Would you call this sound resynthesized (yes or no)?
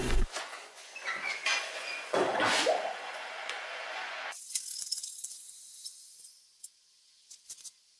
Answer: yes